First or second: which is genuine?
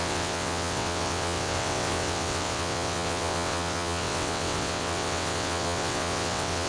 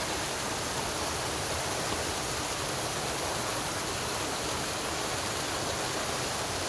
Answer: second